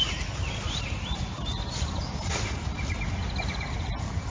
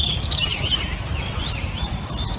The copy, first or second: second